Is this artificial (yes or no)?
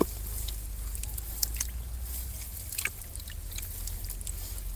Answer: no